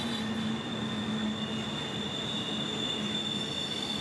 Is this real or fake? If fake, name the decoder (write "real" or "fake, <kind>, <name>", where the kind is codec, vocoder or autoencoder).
real